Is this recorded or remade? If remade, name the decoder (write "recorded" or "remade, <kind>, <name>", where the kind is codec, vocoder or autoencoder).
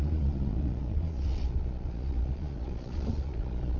remade, vocoder, Vocos